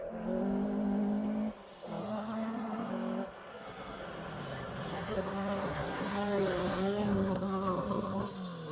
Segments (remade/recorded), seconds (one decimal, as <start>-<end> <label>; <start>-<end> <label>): 0.0-2.0 recorded; 2.0-2.9 remade; 2.9-3.5 recorded; 3.5-4.0 remade; 4.0-4.9 recorded; 4.9-8.2 remade; 8.2-8.7 recorded